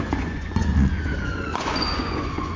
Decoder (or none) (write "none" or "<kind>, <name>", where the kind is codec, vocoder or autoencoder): vocoder, Vocos